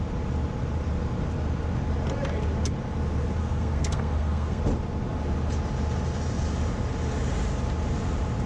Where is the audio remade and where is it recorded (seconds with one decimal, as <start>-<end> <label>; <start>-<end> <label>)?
0.0-3.4 recorded; 3.4-4.6 remade; 4.6-8.5 recorded

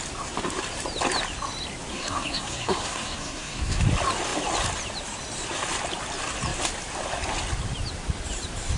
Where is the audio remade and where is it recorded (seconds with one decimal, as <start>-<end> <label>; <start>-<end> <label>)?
0.0-1.9 recorded; 1.9-3.8 remade; 3.8-8.8 recorded